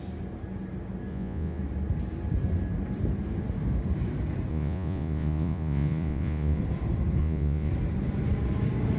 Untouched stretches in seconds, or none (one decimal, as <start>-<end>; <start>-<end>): 0.0-1.1; 1.6-4.5; 6.6-7.2; 7.7-9.0